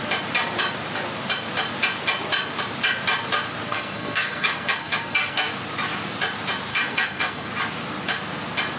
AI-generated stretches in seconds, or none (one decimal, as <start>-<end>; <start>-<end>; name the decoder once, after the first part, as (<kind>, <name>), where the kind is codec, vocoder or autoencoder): 3.7-5.5 (codec, SNAC); 6.7-7.5